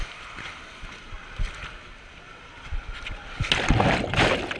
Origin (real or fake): real